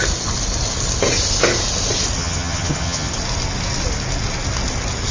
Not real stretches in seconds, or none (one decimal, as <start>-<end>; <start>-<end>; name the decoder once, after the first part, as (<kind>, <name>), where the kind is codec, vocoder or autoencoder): 2.2-3.1 (vocoder, HiFi-GAN)